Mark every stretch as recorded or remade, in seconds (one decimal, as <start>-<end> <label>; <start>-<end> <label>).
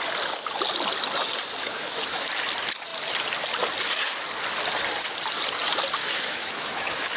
0.0-1.6 recorded; 1.6-2.3 remade; 2.3-6.0 recorded; 6.0-7.2 remade